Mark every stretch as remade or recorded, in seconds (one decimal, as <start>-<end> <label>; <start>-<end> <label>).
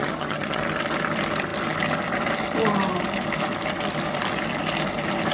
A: 0.0-0.6 remade; 0.6-5.3 recorded